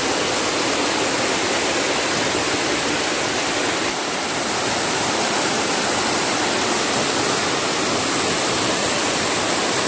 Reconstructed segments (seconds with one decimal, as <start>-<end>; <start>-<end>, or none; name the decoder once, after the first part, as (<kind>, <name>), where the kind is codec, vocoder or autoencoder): none